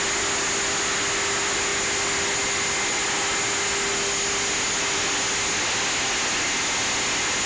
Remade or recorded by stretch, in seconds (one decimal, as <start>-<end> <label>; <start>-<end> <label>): 0.0-7.5 recorded

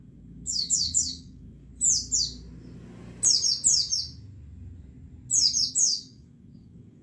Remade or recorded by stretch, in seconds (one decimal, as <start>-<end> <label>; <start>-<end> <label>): 0.0-1.7 remade; 1.7-5.7 recorded; 5.7-7.0 remade

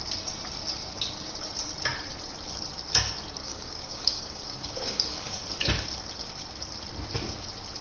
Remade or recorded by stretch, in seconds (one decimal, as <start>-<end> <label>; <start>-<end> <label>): 0.0-3.4 recorded; 3.4-5.4 remade; 5.4-7.8 recorded

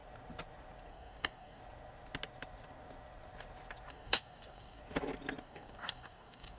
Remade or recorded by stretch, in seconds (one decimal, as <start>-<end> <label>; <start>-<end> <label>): 0.0-0.9 recorded; 0.9-1.6 remade; 1.6-3.9 recorded; 3.9-4.8 remade; 4.8-5.4 recorded; 5.4-6.6 remade

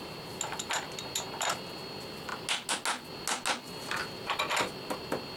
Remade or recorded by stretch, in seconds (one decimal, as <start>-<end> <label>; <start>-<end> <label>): 0.0-5.4 recorded

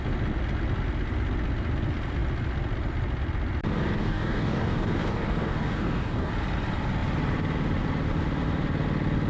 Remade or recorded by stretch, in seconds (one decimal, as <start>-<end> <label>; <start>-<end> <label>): 0.0-4.0 recorded; 4.0-6.3 remade; 6.3-9.3 recorded